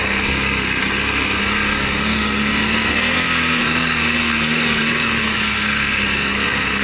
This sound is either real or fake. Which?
fake